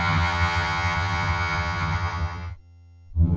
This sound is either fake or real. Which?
fake